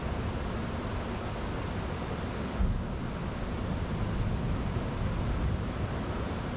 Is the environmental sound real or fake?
real